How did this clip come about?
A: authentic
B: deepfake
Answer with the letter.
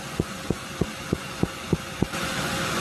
B